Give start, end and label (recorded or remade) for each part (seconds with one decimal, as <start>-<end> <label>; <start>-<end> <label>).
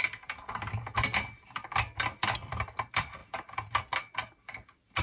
0.0-5.0 recorded